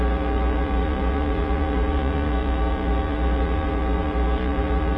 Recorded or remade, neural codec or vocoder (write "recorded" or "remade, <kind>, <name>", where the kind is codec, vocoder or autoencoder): remade, vocoder, Vocos